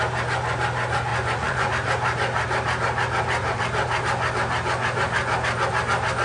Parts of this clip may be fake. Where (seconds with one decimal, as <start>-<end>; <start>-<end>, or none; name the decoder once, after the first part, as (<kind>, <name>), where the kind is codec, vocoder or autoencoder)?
1.1-1.7 (vocoder, Vocos)

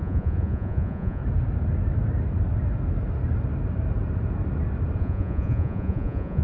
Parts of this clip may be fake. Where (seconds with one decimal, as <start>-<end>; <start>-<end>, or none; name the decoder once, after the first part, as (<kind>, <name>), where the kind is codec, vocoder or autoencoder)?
0.0-1.2 (vocoder, Vocos); 5.0-6.4

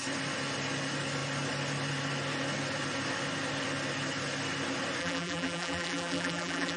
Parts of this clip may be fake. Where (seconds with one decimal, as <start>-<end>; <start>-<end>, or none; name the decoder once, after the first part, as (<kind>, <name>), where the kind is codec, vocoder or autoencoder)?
5.0-6.8 (vocoder, BigVGAN v2)